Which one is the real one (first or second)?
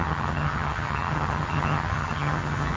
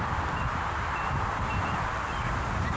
second